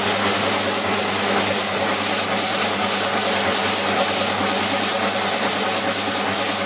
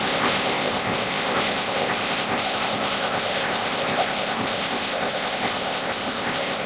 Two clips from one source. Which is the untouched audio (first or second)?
first